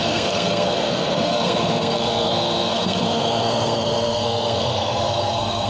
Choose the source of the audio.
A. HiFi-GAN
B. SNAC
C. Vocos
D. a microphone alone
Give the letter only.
B